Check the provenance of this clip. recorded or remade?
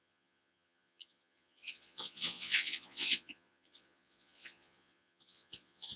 remade